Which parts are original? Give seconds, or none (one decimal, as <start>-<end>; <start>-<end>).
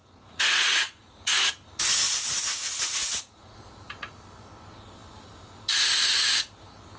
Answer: 1.5-3.0; 4.1-7.0